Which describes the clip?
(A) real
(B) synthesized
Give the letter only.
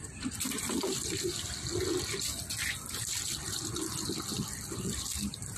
A